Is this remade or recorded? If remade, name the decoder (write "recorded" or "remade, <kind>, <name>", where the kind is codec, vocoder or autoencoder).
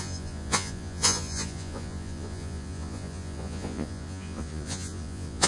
remade, vocoder, Vocos